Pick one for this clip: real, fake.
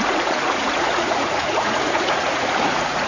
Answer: fake